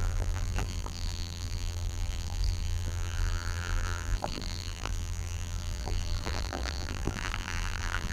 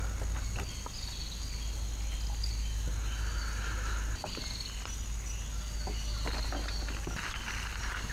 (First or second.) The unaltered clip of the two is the second